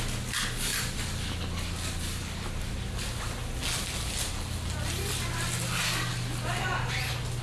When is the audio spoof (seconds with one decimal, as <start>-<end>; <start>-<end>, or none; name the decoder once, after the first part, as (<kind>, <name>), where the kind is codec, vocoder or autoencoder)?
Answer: none